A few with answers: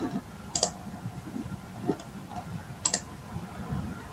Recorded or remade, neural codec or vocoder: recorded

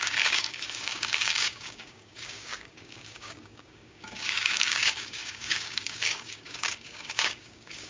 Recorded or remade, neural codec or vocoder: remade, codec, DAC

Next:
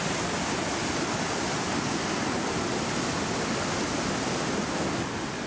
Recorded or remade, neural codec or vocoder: recorded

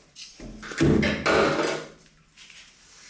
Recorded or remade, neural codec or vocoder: recorded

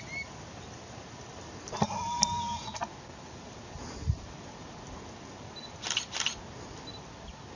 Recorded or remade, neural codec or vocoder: recorded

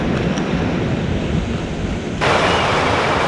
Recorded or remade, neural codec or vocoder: recorded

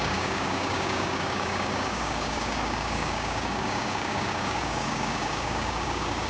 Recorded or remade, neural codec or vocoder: remade, codec, DAC